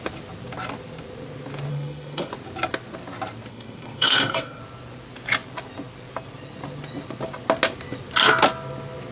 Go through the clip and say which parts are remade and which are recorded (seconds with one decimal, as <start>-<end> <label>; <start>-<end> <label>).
0.0-1.7 recorded; 1.7-2.3 remade; 2.3-3.5 recorded; 3.5-4.6 remade; 4.6-9.1 recorded